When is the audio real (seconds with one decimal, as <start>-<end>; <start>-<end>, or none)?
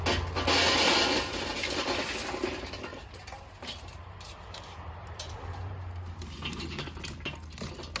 0.0-2.9; 5.8-8.0